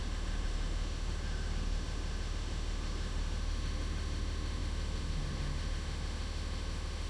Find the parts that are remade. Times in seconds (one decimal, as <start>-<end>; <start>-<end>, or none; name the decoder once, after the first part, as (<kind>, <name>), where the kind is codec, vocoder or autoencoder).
0.0-7.1 (autoencoder, DAC-VAE)